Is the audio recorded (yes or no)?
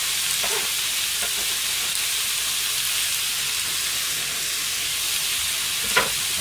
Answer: yes